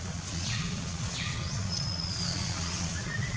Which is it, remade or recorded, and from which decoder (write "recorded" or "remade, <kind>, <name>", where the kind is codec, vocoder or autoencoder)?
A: remade, vocoder, Vocos